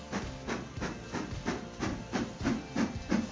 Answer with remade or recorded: recorded